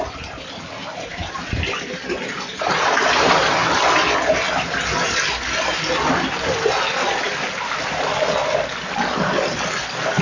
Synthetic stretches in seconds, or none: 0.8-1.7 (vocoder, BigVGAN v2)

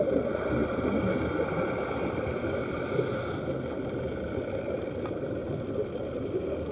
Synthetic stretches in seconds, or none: 0.0-0.6 (vocoder, BigVGAN v2); 4.6-5.4

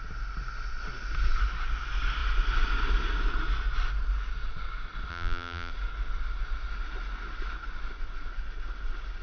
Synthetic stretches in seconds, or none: 5.1-5.7 (vocoder, BigVGAN v2)

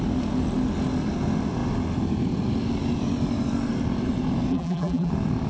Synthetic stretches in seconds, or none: 4.5-5.1 (vocoder, BigVGAN v2)

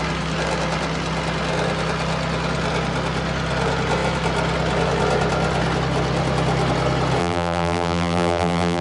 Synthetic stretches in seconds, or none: 7.2-8.8 (vocoder, BigVGAN v2)

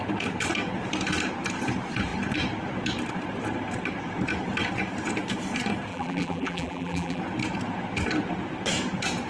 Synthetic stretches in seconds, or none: 5.9-7.2 (vocoder, BigVGAN v2)